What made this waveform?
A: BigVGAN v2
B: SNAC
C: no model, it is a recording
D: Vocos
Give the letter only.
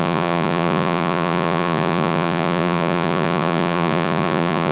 D